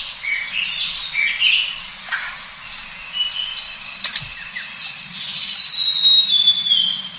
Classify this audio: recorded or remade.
recorded